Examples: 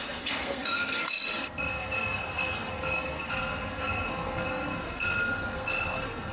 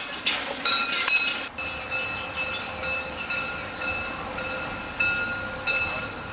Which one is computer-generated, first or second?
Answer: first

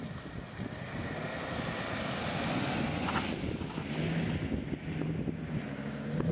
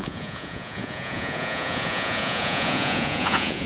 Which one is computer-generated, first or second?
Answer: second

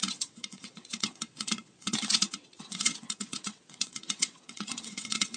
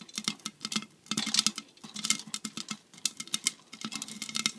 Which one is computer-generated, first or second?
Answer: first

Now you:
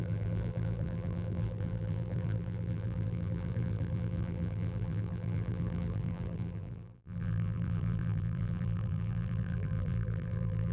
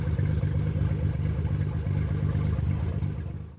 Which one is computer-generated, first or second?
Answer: first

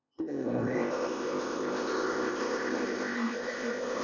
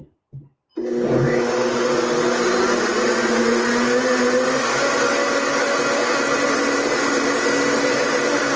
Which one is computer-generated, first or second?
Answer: first